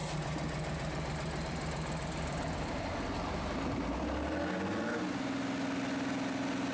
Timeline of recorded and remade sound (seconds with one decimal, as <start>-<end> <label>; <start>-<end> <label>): 0.0-4.0 remade; 4.0-6.7 recorded

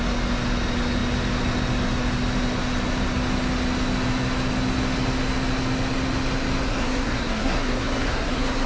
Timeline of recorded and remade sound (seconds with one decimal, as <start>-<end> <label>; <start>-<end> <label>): 0.0-6.7 recorded; 6.7-8.7 remade

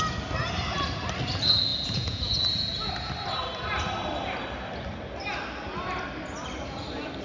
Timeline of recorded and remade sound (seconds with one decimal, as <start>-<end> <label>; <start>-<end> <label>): 0.0-1.7 recorded; 1.7-2.9 remade; 2.9-7.2 recorded

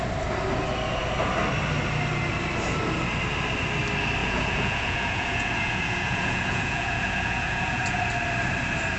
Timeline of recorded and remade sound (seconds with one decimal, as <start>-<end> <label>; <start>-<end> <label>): 0.0-4.2 recorded; 4.2-8.0 remade; 8.0-9.0 recorded

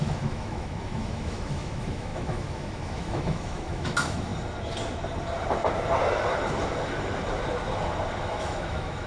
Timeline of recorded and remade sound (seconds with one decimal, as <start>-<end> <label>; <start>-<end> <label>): 0.0-4.3 remade; 4.3-8.2 recorded; 8.2-9.1 remade

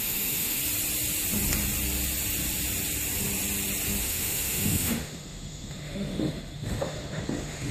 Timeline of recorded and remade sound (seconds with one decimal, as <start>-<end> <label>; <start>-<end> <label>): 0.0-0.6 remade; 0.6-4.0 recorded; 4.0-7.7 remade

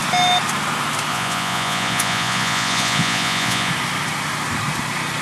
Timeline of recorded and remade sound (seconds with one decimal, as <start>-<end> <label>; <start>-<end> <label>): 0.0-1.1 recorded; 1.1-3.7 remade; 3.7-5.2 recorded